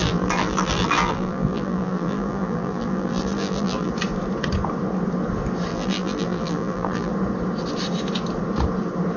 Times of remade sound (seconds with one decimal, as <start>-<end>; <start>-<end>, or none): 0.0-3.9; 5.7-7.1